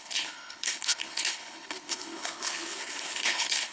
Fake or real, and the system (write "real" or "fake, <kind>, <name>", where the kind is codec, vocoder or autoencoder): fake, codec, HILCodec